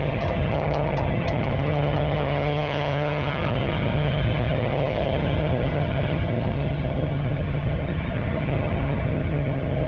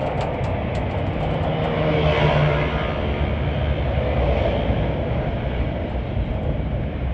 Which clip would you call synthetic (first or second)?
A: first